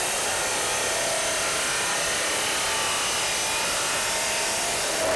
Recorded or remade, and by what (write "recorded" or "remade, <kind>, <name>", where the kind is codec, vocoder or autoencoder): recorded